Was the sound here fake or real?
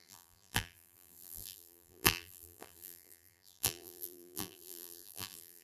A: fake